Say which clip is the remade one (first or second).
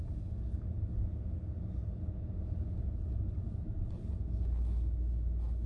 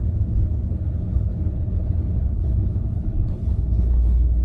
second